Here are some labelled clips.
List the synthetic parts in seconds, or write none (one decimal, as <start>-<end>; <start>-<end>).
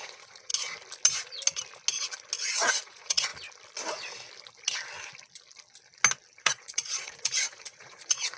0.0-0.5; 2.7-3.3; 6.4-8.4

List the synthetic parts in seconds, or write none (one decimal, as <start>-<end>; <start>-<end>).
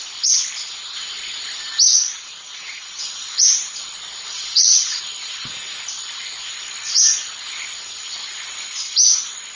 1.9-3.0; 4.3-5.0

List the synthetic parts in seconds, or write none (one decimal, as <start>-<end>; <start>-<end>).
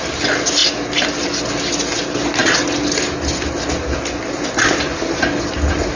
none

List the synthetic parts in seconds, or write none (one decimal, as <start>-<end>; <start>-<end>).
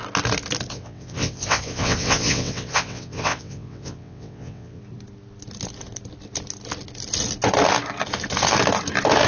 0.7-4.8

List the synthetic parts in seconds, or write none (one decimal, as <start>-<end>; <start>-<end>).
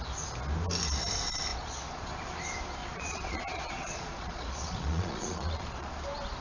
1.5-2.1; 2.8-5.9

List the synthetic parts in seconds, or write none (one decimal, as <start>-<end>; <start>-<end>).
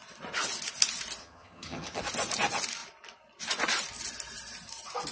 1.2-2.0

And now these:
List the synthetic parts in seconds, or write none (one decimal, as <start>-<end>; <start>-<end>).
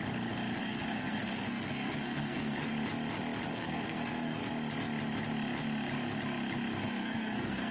0.6-2.7; 3.5-4.4; 6.8-7.7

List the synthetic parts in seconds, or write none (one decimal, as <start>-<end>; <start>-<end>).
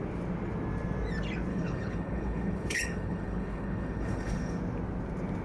1.5-4.6